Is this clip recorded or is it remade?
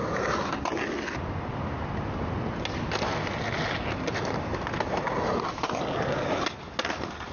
recorded